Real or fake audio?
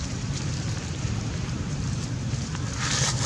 fake